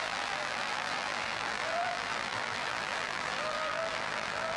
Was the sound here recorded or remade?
remade